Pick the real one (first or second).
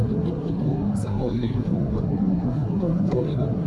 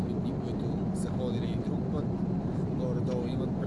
second